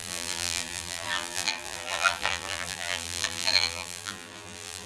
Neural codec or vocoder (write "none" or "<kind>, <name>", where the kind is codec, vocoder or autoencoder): vocoder, BigVGAN v2